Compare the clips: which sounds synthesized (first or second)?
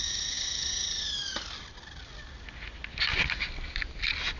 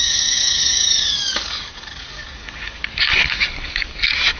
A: second